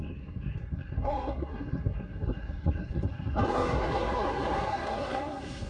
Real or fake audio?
fake